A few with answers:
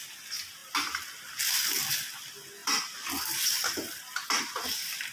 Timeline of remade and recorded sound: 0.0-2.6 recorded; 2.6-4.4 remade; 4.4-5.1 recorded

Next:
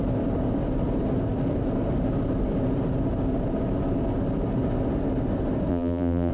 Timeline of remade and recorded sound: 0.0-5.7 recorded; 5.7-6.3 remade